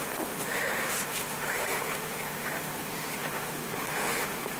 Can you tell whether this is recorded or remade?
remade